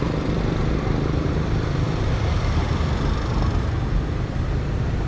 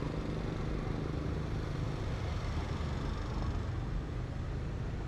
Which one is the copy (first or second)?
first